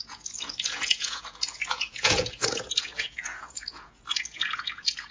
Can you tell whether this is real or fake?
fake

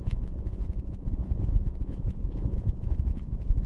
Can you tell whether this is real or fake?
fake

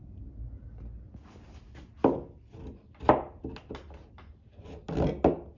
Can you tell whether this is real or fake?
real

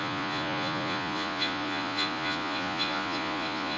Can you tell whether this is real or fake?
fake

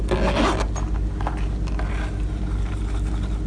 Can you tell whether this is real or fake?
real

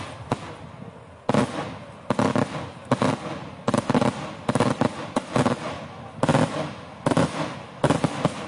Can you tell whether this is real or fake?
real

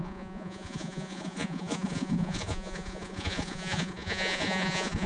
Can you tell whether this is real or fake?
fake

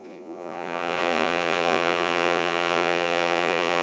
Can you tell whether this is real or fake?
fake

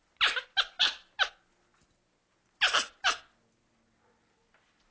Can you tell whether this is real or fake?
real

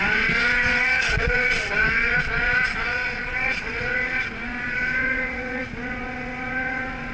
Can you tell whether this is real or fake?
fake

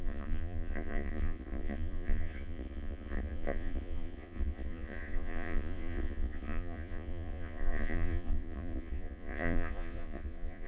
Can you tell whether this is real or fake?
fake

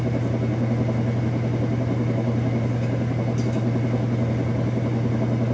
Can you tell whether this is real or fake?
real